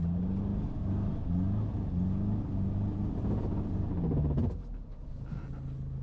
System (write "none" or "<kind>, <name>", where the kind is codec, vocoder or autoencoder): none